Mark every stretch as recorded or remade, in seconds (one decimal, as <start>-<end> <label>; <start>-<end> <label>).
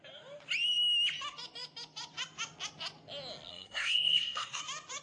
0.0-3.5 recorded; 3.5-4.6 remade; 4.6-5.0 recorded